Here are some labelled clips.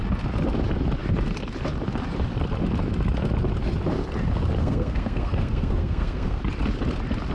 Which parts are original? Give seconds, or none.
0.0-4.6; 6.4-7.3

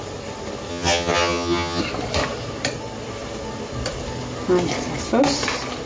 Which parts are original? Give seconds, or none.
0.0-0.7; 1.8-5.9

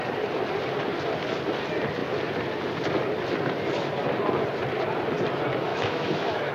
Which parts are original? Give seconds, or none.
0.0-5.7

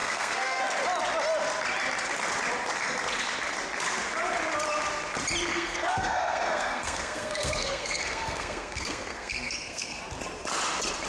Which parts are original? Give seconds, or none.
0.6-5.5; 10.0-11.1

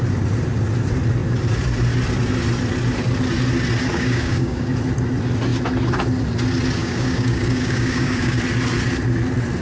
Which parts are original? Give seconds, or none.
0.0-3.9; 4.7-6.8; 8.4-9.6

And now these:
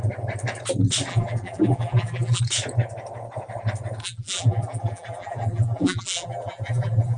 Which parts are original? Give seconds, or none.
0.0-1.1; 2.4-4.0

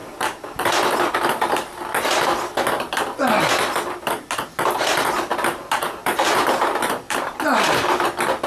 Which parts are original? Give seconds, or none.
0.7-5.3; 8.0-8.5